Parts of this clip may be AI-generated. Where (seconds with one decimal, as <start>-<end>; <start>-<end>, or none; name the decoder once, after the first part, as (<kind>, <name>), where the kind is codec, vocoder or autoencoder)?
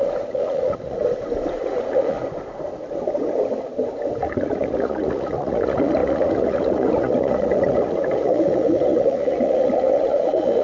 0.0-1.0 (vocoder, Vocos); 1.6-2.2; 4.2-10.6